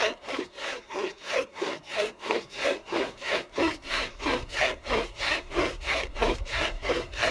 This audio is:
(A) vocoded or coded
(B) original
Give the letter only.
A